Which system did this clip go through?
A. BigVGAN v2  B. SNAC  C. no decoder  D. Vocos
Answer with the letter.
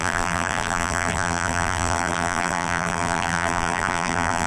A